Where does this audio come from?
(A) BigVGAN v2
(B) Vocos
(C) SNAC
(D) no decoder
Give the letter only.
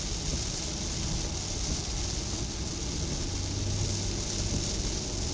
D